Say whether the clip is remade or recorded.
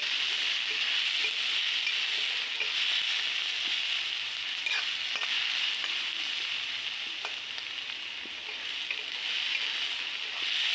recorded